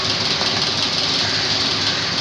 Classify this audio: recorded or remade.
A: recorded